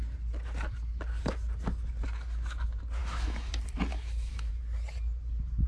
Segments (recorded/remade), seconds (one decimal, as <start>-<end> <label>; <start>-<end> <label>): 0.0-3.0 recorded; 3.0-3.5 remade; 3.5-3.9 recorded; 3.9-4.5 remade; 4.5-5.7 recorded